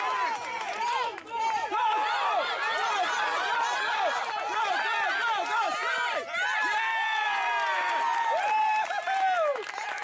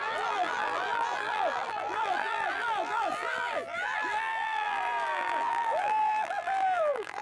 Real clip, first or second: first